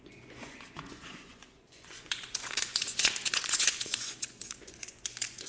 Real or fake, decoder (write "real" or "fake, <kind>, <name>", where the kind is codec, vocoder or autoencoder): fake, vocoder, Vocos